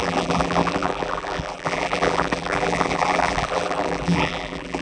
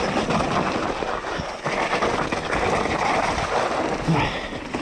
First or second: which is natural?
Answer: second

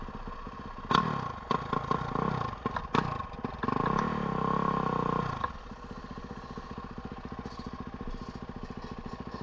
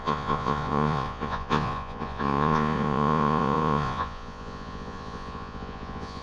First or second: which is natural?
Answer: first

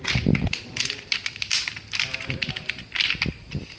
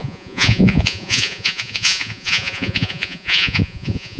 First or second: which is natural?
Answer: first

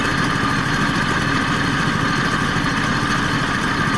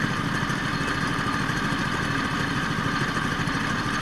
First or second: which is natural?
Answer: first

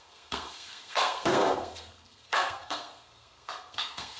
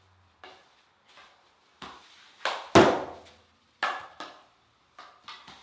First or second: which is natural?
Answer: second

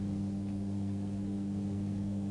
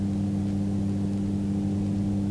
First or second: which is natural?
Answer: second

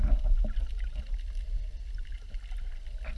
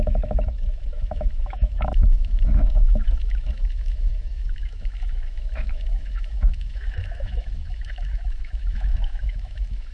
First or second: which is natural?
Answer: first